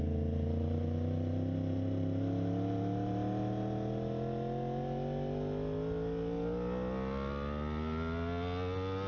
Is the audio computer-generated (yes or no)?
no